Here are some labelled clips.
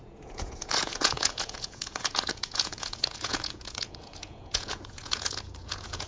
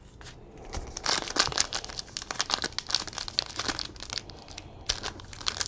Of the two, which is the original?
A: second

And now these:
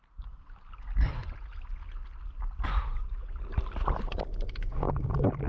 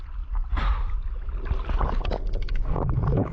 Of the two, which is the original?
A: first